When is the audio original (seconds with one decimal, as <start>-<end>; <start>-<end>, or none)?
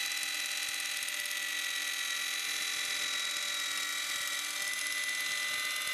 0.0-5.9